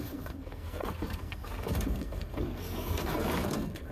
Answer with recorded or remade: remade